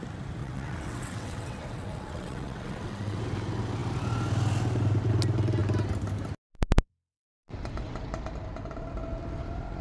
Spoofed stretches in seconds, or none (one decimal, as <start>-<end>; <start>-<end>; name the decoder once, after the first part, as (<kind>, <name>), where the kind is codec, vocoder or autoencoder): 0.4-3.2 (vocoder, WaveNeXt)